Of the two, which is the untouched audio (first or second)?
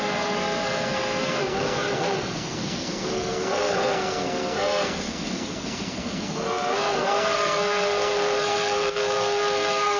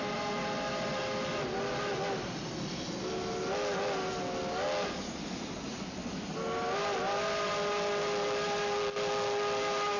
second